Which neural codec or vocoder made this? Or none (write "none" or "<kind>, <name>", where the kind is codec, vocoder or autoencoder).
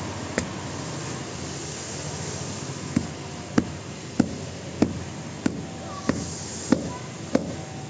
none